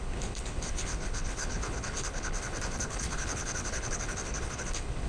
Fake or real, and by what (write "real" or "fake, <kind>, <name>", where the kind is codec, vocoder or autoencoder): fake, codec, HILCodec